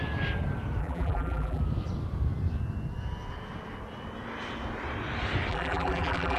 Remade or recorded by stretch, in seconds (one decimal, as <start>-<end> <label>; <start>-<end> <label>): 0.0-0.8 recorded; 0.8-1.6 remade; 1.6-5.5 recorded; 5.5-6.4 remade